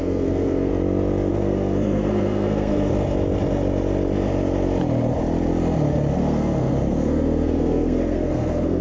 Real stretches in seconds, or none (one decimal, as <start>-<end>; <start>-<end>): 0.7-1.3; 2.9-6.1